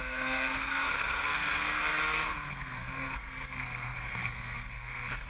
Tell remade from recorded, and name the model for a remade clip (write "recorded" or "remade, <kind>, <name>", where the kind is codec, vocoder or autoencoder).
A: remade, codec, SNAC